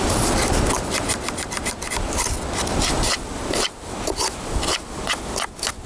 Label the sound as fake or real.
real